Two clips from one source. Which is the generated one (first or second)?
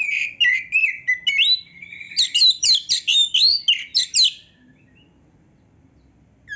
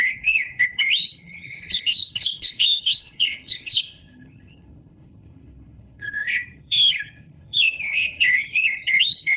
second